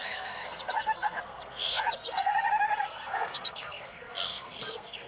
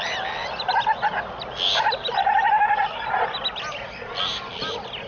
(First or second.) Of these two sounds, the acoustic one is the second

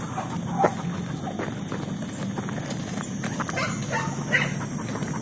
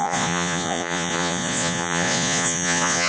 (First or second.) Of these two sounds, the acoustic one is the first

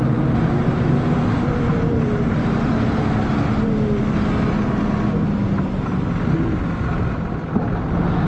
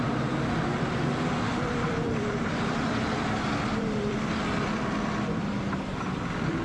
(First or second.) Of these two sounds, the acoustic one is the first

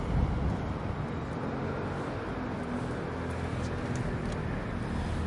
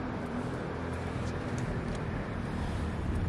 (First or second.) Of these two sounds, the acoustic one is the first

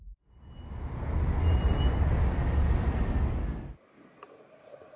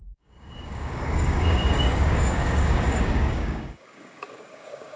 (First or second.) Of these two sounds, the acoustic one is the first